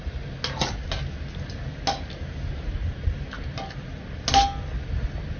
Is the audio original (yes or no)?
yes